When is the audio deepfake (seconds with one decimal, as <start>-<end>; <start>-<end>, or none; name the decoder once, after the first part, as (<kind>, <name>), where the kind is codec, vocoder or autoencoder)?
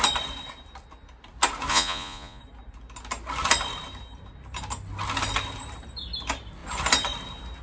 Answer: 1.7-2.4 (vocoder, Vocos)